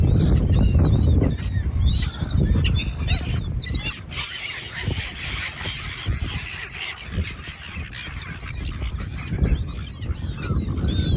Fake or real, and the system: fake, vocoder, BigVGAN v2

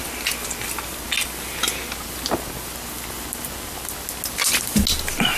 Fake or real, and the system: real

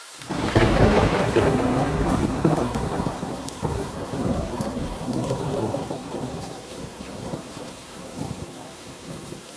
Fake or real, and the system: fake, codec, SNAC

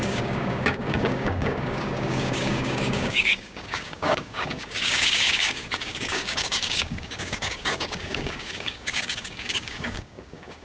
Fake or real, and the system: fake, codec, DAC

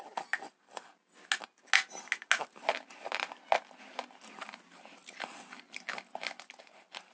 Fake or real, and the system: real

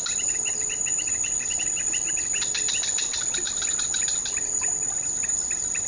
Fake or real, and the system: real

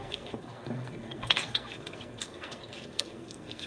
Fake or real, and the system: fake, codec, SNAC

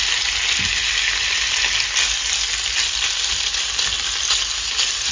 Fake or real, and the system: real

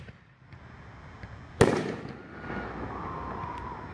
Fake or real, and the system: real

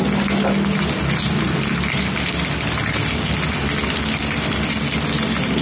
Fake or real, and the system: real